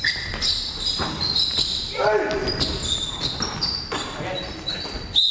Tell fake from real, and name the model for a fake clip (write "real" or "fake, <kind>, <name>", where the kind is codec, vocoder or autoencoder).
real